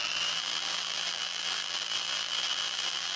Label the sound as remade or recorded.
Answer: remade